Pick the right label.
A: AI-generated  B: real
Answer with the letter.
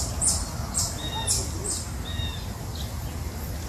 B